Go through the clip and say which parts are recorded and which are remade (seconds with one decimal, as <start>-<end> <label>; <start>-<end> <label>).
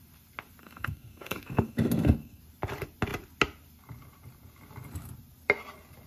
0.0-0.6 recorded; 0.6-2.4 remade; 2.4-6.1 recorded